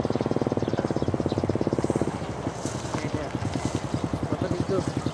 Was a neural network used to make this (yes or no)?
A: no